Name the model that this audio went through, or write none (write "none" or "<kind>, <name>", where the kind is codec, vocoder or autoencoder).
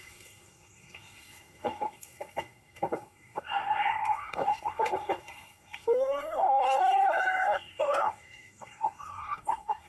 codec, SNAC